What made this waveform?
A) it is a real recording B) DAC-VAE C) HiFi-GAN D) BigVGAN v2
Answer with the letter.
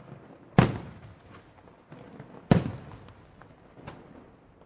A